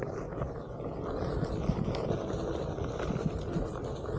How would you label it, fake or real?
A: real